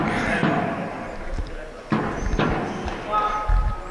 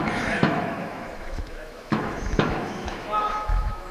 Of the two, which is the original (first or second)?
first